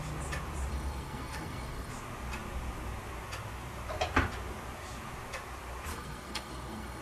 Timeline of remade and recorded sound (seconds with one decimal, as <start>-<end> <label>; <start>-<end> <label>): 0.0-0.7 recorded; 0.7-1.9 remade; 1.9-5.9 recorded; 5.9-7.0 remade